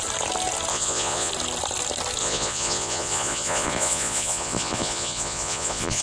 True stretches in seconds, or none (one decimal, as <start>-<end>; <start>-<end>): 0.0-0.7; 1.3-2.2